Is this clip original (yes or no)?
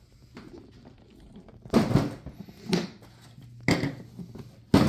yes